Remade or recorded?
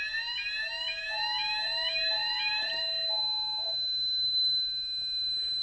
recorded